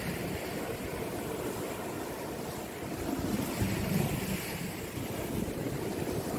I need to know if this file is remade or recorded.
recorded